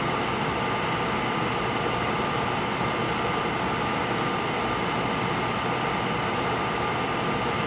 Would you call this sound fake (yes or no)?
no